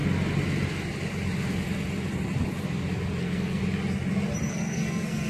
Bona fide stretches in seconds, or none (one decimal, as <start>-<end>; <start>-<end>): 0.0-3.2; 3.6-4.5